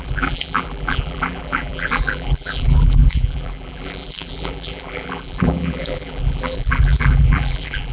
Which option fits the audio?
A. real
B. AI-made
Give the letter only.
B